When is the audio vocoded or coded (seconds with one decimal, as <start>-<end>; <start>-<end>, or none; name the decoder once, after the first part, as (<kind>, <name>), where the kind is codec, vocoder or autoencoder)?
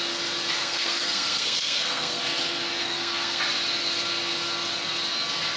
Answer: 0.6-2.2 (codec, SNAC); 2.8-3.4